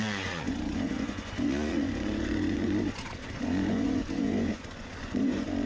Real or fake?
fake